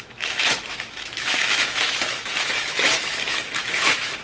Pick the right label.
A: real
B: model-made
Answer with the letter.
B